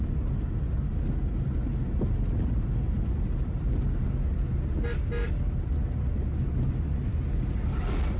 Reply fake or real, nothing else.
real